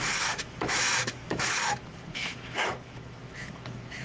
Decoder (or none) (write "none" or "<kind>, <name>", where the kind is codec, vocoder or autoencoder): autoencoder, DAC-VAE